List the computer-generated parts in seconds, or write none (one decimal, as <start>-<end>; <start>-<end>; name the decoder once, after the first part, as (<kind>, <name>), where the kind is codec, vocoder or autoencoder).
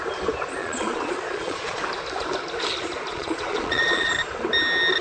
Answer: 0.6-1.8 (vocoder, Vocos); 3.1-4.1